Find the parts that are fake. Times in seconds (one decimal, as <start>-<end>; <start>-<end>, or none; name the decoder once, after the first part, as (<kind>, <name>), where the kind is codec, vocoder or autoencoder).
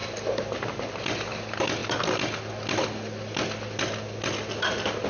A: none